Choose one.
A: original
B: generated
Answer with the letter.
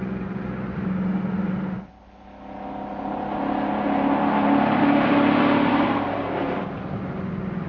A